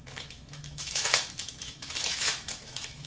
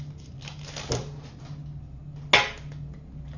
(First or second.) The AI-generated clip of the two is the first